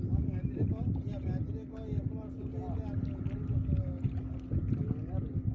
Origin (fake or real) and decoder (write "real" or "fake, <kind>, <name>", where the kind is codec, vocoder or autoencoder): real